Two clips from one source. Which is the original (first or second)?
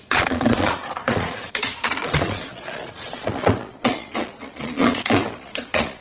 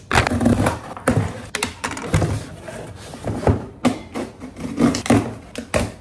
second